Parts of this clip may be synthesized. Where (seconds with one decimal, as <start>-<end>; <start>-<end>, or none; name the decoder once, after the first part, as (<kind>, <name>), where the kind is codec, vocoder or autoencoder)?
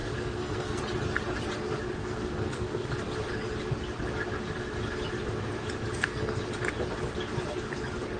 0.0-0.8 (codec, SNAC); 2.0-2.9; 5.9-6.4